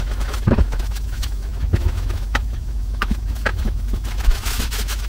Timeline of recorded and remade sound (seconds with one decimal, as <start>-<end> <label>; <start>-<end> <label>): 0.0-5.1 remade